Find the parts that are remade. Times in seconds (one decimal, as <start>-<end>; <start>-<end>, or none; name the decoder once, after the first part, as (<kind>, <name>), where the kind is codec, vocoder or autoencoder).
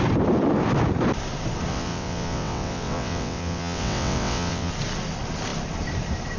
1.7-4.7 (vocoder, WaveNeXt)